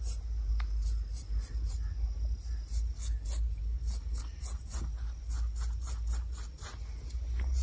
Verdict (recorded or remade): recorded